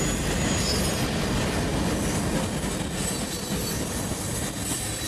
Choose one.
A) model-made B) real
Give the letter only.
B